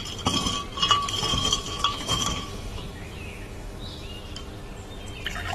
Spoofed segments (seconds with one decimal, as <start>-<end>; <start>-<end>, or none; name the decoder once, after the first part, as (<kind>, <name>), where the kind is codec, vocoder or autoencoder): 1.3-4.2 (autoencoder, DAC-VAE)